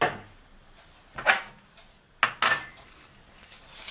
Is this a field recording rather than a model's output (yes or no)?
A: yes